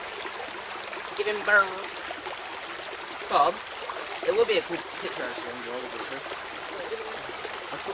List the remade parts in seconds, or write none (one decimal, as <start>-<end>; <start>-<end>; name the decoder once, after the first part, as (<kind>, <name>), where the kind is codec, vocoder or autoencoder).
5.3-5.8 (autoencoder, DAC-VAE)